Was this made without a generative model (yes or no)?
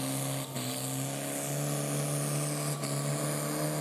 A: yes